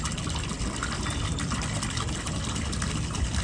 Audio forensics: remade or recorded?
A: remade